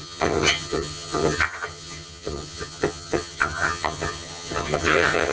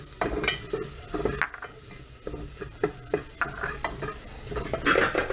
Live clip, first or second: second